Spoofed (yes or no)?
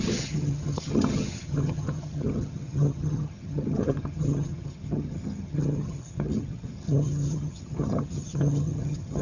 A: yes